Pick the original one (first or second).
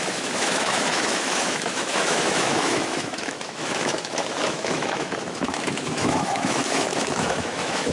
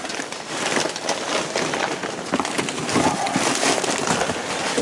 second